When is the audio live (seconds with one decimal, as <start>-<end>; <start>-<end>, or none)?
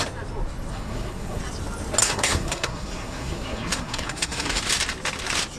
0.0-0.7; 1.4-2.0; 4.6-5.6